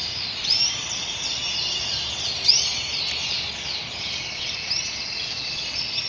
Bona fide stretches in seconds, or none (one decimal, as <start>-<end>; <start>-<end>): 0.0-4.6; 5.2-6.1